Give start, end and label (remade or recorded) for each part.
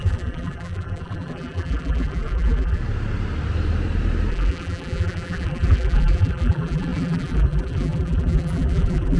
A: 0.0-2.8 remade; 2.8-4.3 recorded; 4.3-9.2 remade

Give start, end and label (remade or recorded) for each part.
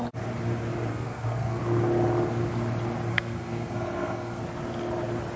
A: 0.0-0.9 recorded; 0.9-1.6 remade; 1.6-3.1 recorded; 3.1-4.4 remade; 4.4-5.4 recorded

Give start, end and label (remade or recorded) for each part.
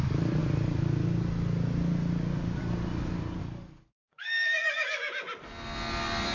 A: 0.0-3.4 recorded; 3.4-5.1 remade; 5.1-6.3 recorded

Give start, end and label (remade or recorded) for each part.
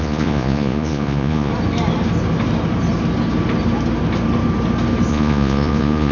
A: 0.0-1.5 remade; 1.5-5.1 recorded; 5.1-6.1 remade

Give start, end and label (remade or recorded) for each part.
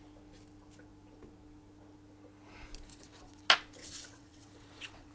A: 0.0-2.9 recorded; 2.9-3.4 remade; 3.4-3.8 recorded; 3.8-5.1 remade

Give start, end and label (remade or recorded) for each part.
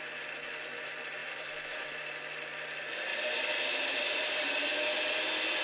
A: 0.0-1.2 recorded; 1.2-1.9 remade; 1.9-3.1 recorded; 3.1-4.5 remade; 4.5-5.6 recorded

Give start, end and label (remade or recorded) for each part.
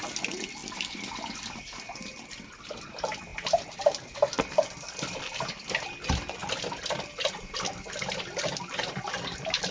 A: 0.0-0.6 recorded; 0.6-2.0 remade; 2.0-3.3 recorded; 3.3-5.2 remade; 5.2-6.4 recorded; 6.4-9.7 remade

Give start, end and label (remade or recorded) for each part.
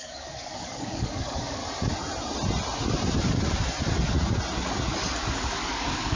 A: 0.0-1.6 remade; 1.6-5.3 recorded; 5.3-6.2 remade